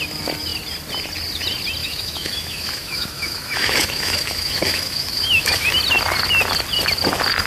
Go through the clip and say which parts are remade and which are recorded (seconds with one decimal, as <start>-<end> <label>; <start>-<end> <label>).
0.0-1.8 recorded; 1.8-5.7 remade; 5.7-7.5 recorded